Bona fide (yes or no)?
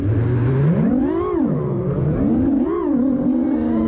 yes